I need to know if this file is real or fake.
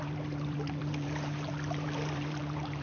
fake